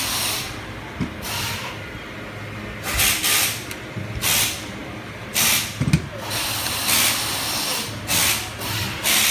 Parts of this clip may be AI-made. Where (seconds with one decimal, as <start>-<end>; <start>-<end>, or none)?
none